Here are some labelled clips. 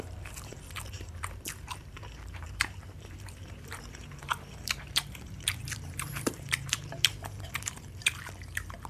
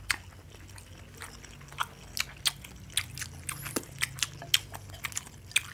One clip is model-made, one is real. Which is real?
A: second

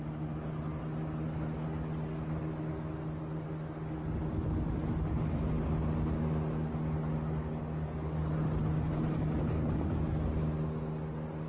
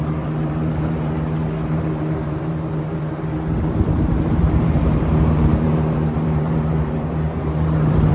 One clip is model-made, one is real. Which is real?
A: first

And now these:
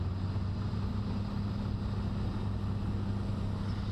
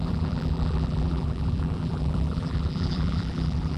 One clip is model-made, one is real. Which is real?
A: first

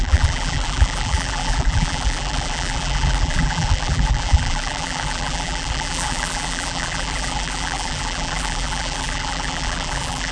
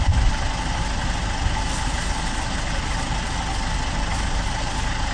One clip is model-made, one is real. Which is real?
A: second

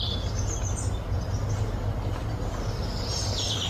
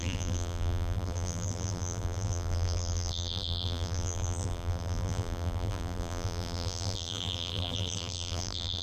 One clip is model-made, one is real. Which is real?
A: first